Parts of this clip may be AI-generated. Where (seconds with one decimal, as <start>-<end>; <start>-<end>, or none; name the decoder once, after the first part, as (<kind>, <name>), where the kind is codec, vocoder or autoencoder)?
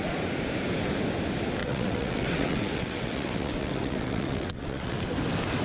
1.6-5.0 (vocoder, WaveNeXt)